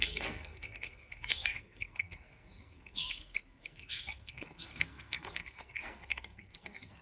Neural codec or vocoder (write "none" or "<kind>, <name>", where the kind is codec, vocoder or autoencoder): codec, SNAC